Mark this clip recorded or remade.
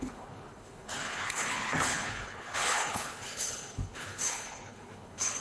remade